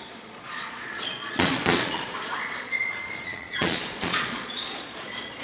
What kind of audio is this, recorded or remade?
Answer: remade